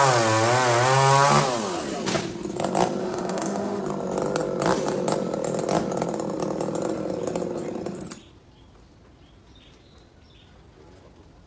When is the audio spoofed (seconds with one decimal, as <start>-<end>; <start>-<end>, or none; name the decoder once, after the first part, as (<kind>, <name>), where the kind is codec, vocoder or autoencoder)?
3.0-3.8 (autoencoder, DAC-VAE)